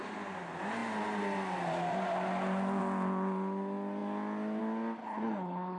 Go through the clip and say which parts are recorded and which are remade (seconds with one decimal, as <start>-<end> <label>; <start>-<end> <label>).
0.0-5.0 recorded; 5.0-5.8 remade